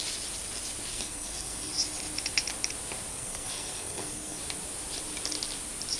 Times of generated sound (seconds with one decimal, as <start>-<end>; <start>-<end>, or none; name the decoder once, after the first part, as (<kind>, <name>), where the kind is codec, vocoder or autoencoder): 0.9-1.7 (codec, SNAC); 3.1-4.4